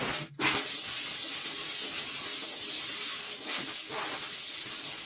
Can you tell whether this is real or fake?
real